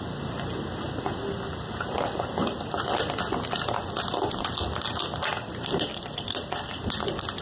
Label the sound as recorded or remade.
recorded